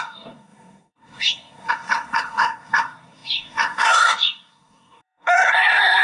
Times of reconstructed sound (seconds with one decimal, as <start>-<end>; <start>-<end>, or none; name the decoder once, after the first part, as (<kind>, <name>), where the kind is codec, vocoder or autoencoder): 0.0-6.0 (codec, SNAC)